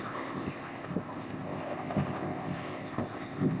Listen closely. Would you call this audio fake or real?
fake